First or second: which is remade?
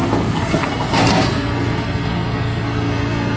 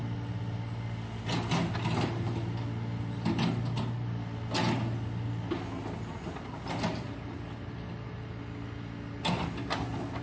first